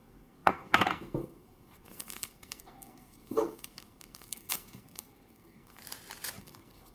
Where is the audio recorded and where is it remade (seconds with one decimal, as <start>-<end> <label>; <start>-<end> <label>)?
0.0-5.8 remade; 5.8-6.4 recorded; 6.4-6.9 remade